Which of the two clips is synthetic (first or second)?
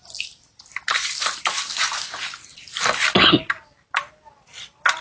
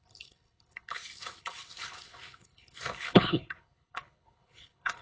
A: second